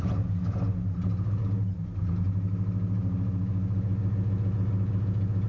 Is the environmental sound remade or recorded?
recorded